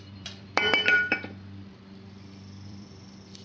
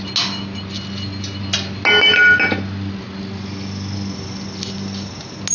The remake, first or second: first